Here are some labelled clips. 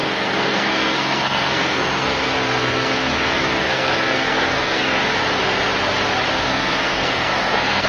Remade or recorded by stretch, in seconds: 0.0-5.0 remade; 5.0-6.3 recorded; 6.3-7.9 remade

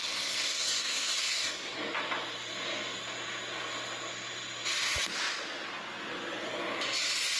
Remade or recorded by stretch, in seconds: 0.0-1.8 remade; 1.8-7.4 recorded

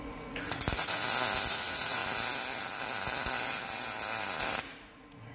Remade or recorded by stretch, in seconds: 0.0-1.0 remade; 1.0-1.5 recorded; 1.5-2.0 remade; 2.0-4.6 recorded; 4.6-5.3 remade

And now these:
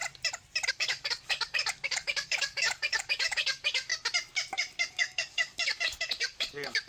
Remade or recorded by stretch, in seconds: 0.0-0.7 recorded; 0.7-3.9 remade; 3.9-4.9 recorded; 4.9-6.9 remade

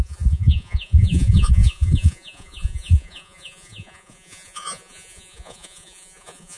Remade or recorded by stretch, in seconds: 0.0-6.6 remade

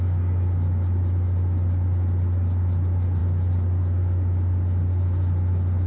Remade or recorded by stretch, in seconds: 0.0-5.9 recorded

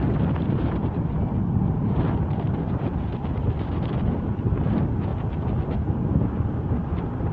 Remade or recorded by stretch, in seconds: 0.0-6.2 remade; 6.2-7.3 recorded